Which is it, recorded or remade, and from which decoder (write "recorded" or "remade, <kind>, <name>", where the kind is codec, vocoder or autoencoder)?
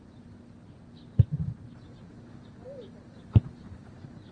recorded